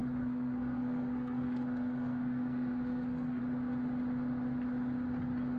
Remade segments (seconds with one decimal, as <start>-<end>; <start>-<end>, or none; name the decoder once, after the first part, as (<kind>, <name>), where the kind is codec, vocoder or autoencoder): 0.0-3.4 (codec, SNAC)